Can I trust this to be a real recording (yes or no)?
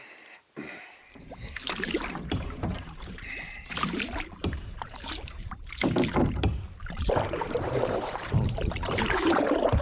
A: no